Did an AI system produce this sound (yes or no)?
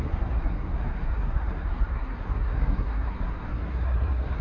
yes